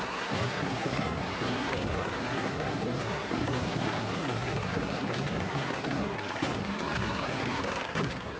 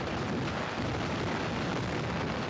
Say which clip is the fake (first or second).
first